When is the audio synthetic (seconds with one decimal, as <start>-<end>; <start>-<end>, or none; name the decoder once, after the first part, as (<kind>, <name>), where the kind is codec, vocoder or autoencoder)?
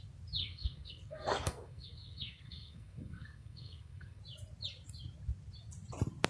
0.4-4.2 (codec, SNAC)